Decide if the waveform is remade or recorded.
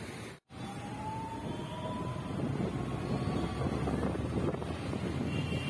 recorded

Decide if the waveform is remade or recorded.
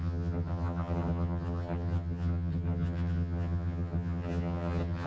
remade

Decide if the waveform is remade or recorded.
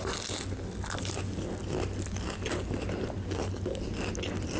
recorded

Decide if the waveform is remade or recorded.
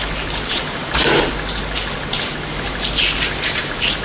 recorded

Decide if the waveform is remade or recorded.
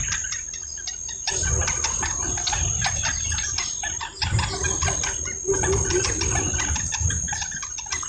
recorded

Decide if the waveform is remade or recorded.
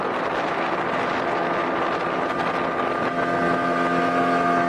recorded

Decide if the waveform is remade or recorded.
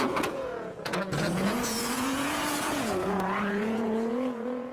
remade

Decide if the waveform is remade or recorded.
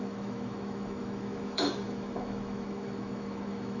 remade